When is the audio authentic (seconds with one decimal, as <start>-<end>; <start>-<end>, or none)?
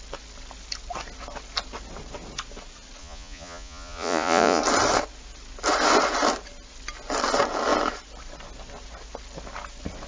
0.0-3.0; 4.6-10.1